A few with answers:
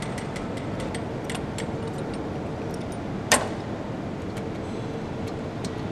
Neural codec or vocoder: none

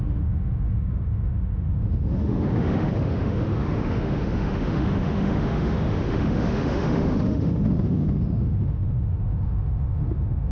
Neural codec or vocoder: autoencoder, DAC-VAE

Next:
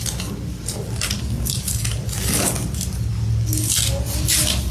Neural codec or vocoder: none